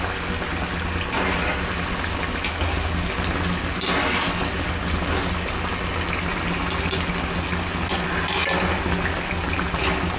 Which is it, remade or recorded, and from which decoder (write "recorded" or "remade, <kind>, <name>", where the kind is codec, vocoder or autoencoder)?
recorded